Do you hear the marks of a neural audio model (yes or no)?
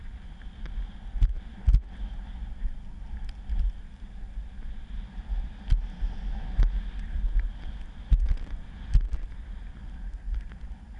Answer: no